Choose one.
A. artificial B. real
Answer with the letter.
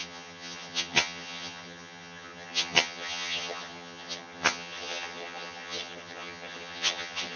A